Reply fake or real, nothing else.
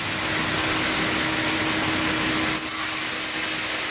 real